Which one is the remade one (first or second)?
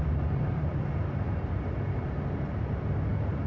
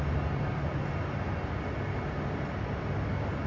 first